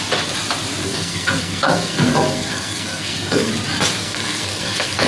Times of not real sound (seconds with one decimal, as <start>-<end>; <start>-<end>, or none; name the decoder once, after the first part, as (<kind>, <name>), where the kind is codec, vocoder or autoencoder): 0.8-3.5 (codec, SNAC); 4.0-5.1